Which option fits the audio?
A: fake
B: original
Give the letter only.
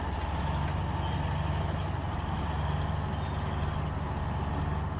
B